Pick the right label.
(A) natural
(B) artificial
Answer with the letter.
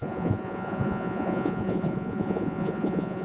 B